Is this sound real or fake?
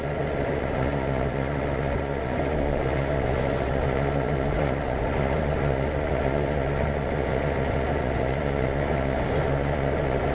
fake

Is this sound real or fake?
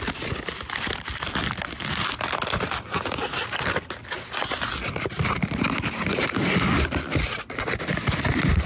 real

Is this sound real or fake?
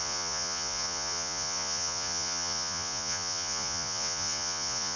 fake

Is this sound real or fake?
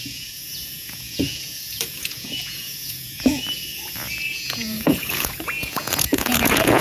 fake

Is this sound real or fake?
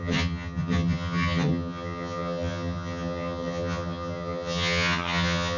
fake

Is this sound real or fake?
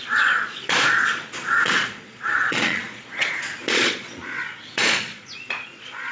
fake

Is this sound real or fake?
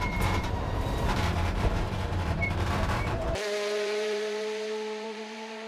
fake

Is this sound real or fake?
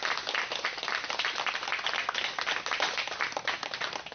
real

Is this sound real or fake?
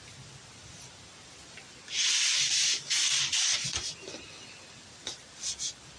real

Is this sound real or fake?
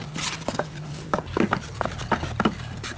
real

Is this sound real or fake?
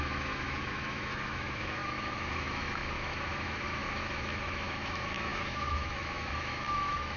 fake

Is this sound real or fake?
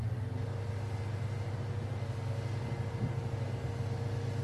real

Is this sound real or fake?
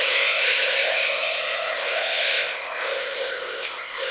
fake